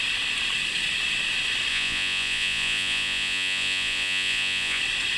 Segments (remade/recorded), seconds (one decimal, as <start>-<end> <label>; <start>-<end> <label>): 0.0-1.7 recorded; 1.7-4.8 remade; 4.8-5.2 recorded